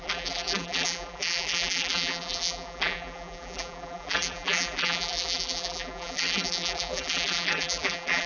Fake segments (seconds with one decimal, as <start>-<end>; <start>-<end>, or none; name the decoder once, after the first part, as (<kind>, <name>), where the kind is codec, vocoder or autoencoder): 0.0-8.3 (vocoder, BigVGAN v2)